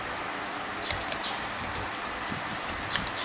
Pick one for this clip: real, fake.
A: real